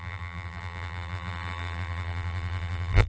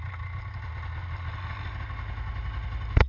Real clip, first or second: second